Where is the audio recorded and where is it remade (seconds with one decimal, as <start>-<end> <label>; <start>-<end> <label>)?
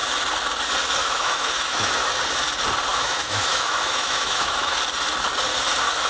0.0-1.0 recorded; 1.0-2.1 remade; 2.1-2.9 recorded; 2.9-4.7 remade; 4.7-6.1 recorded